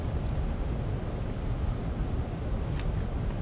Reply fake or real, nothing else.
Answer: real